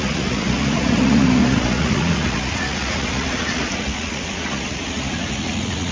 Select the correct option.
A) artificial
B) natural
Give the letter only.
A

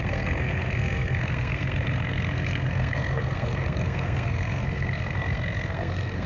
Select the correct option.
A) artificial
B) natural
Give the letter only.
A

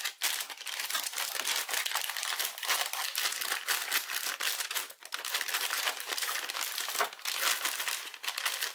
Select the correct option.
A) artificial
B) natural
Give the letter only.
B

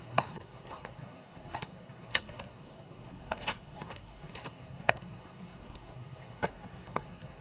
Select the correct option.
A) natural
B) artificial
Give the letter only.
B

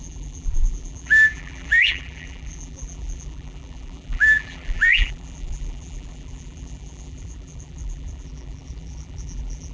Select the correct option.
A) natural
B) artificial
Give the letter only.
B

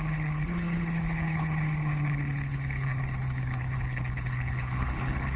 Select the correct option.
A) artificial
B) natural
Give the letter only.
A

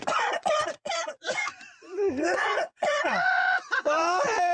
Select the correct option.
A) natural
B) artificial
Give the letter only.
B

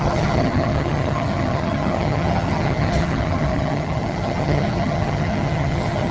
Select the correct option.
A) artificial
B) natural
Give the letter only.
A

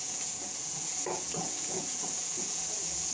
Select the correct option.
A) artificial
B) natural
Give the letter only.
A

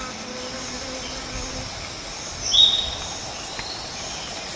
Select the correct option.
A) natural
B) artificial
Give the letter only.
A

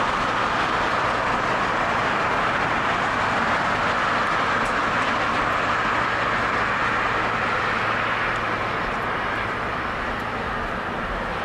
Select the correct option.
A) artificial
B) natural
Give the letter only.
B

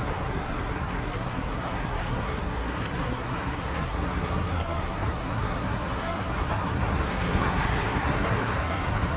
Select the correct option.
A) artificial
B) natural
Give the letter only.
A